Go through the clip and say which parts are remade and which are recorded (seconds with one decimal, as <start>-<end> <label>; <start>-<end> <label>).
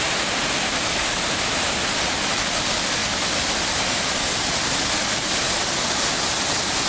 0.0-6.9 recorded